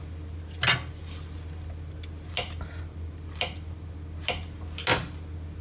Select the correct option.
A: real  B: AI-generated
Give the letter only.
A